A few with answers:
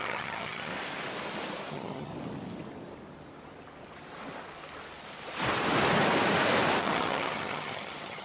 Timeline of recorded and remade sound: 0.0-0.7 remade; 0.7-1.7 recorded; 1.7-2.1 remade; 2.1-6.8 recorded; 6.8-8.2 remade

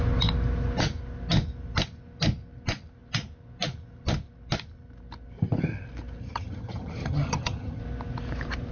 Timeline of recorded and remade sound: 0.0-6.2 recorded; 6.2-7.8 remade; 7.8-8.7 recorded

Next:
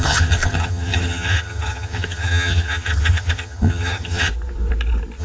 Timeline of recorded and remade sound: 0.0-4.3 remade; 4.3-5.2 recorded

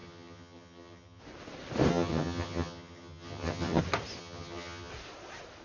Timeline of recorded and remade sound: 0.0-1.2 remade; 1.2-1.9 recorded; 1.9-3.8 remade; 3.8-4.2 recorded; 4.2-4.9 remade; 4.9-5.6 recorded

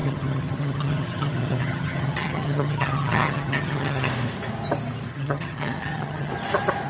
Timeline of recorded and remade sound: 0.0-4.1 remade; 4.1-5.1 recorded; 5.1-6.3 remade; 6.3-6.9 recorded

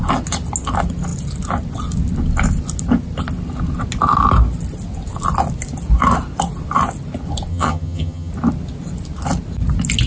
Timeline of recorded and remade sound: 0.0-7.5 recorded; 7.5-8.3 remade; 8.3-10.1 recorded

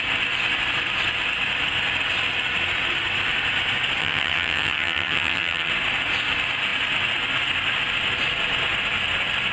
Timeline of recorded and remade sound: 0.0-4.0 recorded; 4.0-5.7 remade; 5.7-9.5 recorded